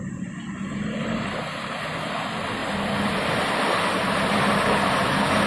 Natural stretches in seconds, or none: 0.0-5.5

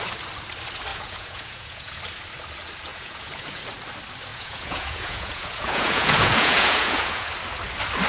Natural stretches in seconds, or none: 0.0-0.9; 2.0-2.9; 3.6-4.3; 7.3-8.1

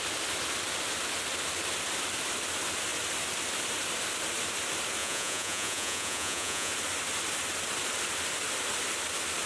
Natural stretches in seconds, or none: 0.0-5.0; 6.7-9.5

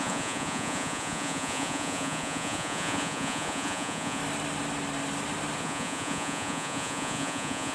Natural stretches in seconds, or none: 4.2-5.6

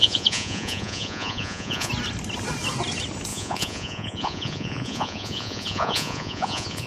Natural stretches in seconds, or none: 1.9-3.3